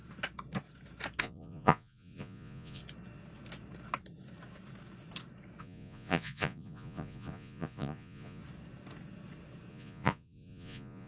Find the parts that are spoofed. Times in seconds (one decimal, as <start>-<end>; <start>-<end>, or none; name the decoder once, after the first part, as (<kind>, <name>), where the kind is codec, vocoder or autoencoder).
1.2-2.8 (vocoder, Vocos); 5.6-8.4; 9.7-11.1